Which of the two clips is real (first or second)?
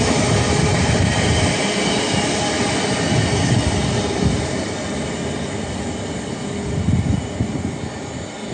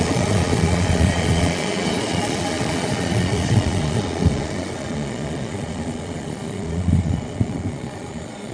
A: first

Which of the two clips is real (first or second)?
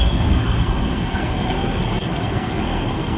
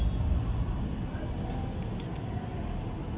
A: second